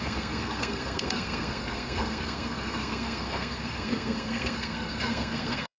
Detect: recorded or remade remade